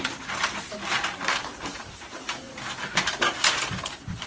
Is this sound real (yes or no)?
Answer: no